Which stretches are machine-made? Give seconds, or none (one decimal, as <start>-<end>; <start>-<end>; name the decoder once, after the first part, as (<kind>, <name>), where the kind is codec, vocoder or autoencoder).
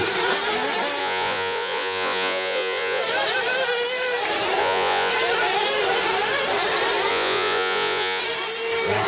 1.0-3.0 (vocoder, Vocos); 4.6-5.1; 7.1-8.2